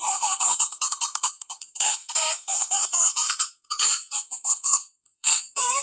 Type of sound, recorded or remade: remade